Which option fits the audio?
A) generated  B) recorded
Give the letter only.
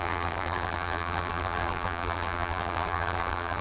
A